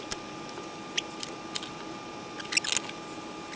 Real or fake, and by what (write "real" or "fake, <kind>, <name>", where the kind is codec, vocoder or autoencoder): real